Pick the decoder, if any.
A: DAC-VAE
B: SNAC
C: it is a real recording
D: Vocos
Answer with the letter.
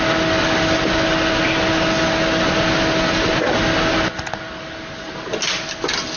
C